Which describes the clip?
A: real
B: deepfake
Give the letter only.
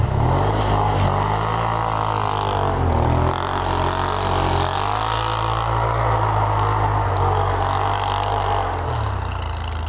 A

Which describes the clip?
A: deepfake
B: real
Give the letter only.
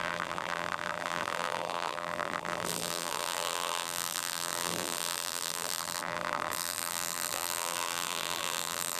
A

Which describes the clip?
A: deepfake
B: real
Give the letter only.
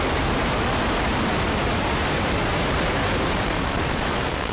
A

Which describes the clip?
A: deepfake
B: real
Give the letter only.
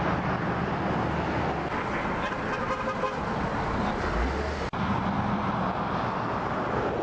B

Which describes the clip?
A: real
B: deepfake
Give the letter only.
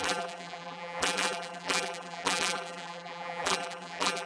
B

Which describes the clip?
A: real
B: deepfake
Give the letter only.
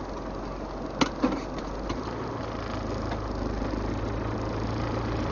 A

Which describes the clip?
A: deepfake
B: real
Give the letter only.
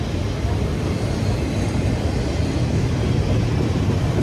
B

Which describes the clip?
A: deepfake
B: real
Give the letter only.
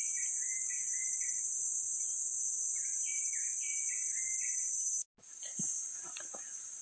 B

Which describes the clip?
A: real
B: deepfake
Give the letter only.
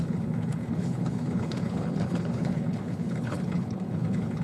B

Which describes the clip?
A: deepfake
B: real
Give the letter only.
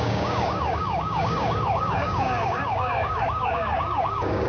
A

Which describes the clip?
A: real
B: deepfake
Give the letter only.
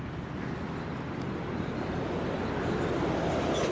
A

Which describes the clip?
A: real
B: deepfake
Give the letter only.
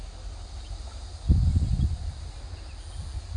A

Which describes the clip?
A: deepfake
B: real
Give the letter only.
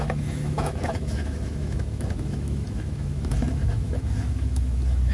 A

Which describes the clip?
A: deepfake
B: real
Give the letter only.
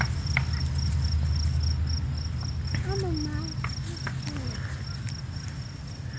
B